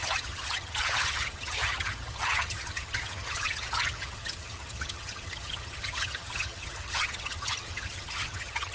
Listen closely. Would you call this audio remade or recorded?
remade